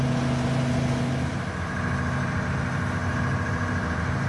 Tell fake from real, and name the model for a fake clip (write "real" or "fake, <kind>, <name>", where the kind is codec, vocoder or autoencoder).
real